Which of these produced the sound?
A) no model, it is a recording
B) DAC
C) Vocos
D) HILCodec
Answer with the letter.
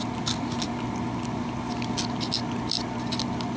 A